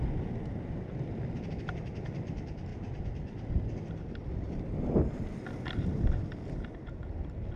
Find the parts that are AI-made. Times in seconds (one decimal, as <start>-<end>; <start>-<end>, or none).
none